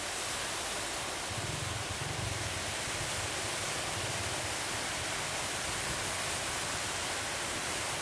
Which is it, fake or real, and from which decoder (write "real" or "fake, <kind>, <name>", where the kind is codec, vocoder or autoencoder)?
real